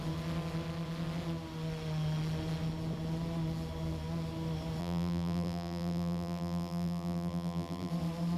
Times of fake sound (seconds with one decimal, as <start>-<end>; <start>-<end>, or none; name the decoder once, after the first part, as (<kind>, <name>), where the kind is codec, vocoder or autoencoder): 4.8-7.9 (vocoder, BigVGAN v2)